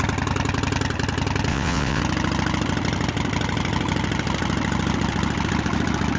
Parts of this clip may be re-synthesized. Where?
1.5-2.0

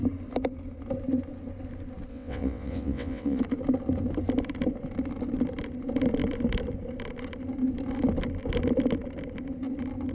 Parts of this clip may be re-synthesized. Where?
2.1-3.4